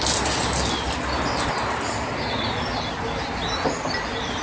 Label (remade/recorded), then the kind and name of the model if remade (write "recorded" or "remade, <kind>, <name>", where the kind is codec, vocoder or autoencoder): recorded